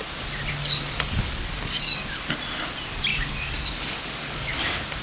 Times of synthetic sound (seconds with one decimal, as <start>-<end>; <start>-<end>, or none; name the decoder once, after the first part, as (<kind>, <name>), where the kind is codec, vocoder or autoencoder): 0.7-2.3 (codec, DAC); 3.1-4.6